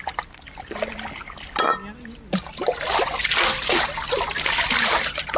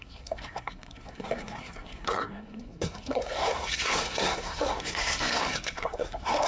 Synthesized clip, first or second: second